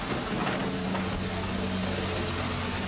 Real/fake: real